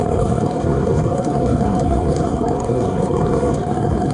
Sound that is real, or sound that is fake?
fake